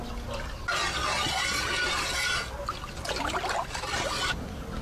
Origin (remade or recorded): recorded